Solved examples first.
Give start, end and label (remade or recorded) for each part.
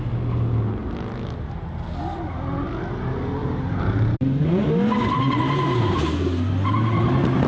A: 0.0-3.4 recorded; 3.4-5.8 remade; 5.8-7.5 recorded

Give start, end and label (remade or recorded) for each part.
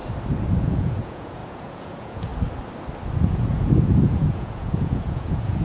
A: 0.0-0.6 recorded; 0.6-2.3 remade; 2.3-3.2 recorded; 3.2-5.6 remade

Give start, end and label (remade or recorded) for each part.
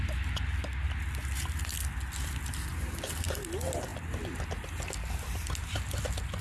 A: 0.0-2.7 recorded; 2.7-3.4 remade; 3.4-6.4 recorded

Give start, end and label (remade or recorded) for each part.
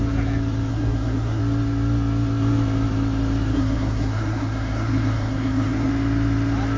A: 0.0-0.7 recorded; 0.7-1.4 remade; 1.4-3.5 recorded; 3.5-5.9 remade; 5.9-6.8 recorded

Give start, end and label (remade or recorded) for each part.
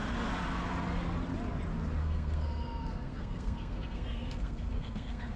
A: 0.0-2.0 recorded; 2.0-5.4 remade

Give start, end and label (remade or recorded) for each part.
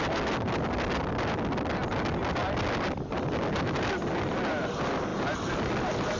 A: 0.0-6.2 recorded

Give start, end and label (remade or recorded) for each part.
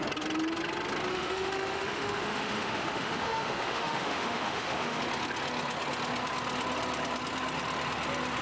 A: 0.0-1.1 recorded; 1.1-5.0 remade; 5.0-8.4 recorded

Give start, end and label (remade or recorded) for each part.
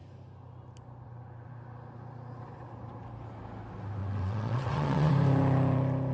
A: 0.0-4.0 recorded; 4.0-5.1 remade; 5.1-6.1 recorded